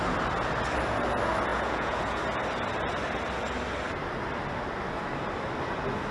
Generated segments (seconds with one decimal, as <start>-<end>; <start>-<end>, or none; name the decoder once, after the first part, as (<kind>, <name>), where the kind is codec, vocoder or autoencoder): 1.5-2.2 (vocoder, Vocos)